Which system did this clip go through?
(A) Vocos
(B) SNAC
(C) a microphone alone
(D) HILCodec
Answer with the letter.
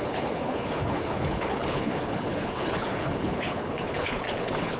D